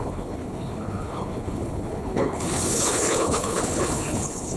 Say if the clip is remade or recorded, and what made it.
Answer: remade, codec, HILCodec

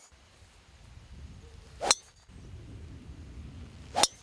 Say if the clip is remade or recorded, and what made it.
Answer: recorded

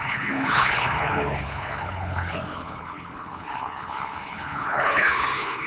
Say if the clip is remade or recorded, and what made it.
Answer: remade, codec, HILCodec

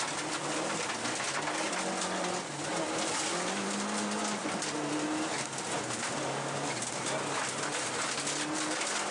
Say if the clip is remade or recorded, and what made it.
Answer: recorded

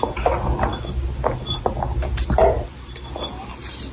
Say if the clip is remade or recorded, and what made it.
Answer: recorded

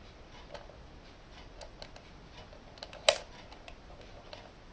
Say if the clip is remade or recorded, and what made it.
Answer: recorded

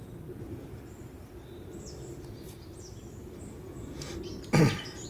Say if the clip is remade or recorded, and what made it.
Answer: recorded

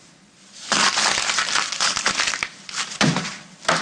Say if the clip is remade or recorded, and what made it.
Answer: recorded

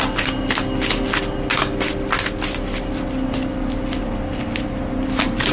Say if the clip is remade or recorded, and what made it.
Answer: recorded